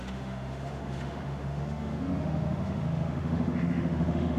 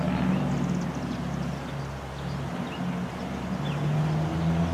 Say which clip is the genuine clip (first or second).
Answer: second